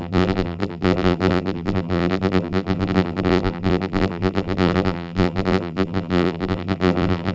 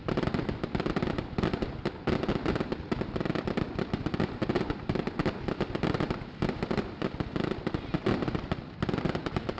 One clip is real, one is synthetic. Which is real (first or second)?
second